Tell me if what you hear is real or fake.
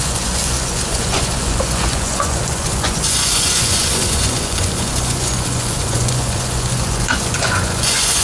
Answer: fake